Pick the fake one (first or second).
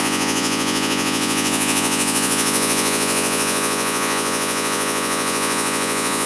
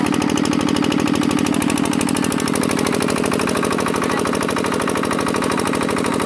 first